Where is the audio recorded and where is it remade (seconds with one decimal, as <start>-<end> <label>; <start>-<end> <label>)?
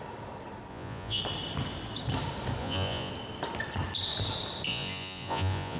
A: 0.0-0.7 recorded; 0.7-1.2 remade; 1.2-2.6 recorded; 2.6-3.1 remade; 3.1-4.7 recorded; 4.7-5.8 remade